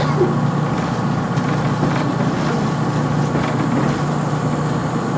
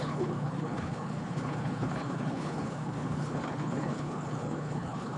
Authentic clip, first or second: first